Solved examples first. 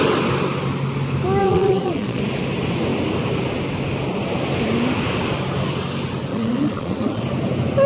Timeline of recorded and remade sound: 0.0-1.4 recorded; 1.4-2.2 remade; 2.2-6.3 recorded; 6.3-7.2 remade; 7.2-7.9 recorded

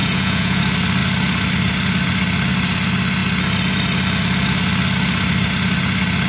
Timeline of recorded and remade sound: 0.0-0.6 remade; 0.6-6.3 recorded

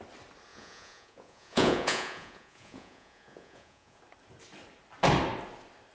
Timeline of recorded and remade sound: 0.0-0.5 recorded; 0.5-4.0 remade; 4.0-5.9 recorded

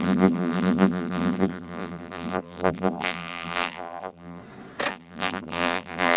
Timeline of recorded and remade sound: 0.0-4.4 remade; 4.4-4.9 recorded; 4.9-6.2 remade

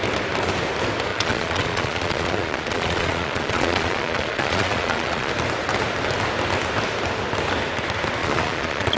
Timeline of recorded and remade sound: 0.0-1.1 recorded; 1.1-5.3 remade; 5.3-8.2 recorded; 8.2-9.0 remade

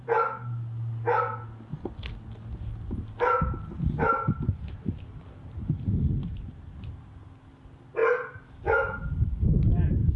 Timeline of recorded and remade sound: 0.0-10.2 recorded

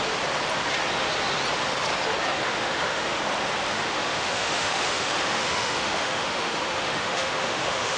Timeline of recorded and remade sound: 0.0-2.4 recorded; 2.4-3.2 remade; 3.2-3.7 recorded; 3.7-8.0 remade